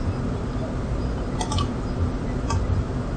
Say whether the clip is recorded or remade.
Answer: recorded